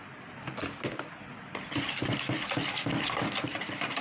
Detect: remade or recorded recorded